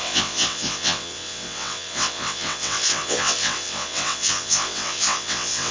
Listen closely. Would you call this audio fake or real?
fake